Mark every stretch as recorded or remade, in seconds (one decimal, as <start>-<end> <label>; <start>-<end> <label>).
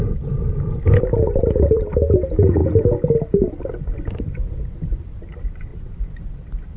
0.0-6.8 recorded